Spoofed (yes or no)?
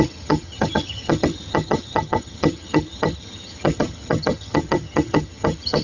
yes